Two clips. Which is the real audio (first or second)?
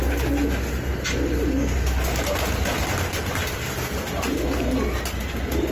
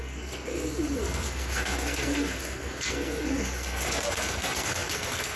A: first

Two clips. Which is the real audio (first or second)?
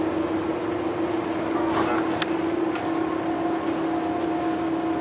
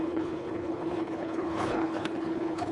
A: first